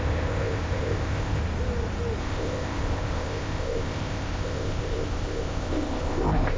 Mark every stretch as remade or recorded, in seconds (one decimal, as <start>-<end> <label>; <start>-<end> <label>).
0.0-1.4 remade; 1.4-2.2 recorded; 2.2-6.6 remade